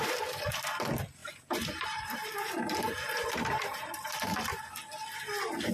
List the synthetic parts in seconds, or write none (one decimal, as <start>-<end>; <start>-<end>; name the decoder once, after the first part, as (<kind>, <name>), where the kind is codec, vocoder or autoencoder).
1.2-4.6 (vocoder, BigVGAN v2)